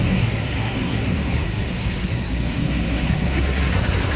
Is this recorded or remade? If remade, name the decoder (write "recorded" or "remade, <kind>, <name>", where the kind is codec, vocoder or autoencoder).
remade, codec, SNAC